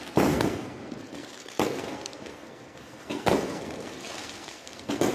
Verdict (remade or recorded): remade